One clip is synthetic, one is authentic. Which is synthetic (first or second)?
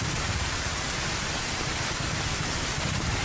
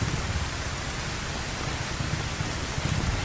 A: first